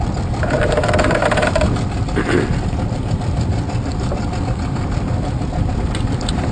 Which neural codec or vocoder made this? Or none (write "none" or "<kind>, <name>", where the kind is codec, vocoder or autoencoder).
none